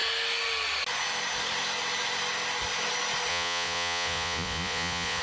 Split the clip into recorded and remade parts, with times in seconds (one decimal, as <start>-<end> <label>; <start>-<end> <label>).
0.0-3.3 recorded; 3.3-5.2 remade